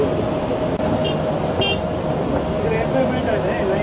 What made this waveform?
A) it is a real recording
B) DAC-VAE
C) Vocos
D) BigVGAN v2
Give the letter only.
A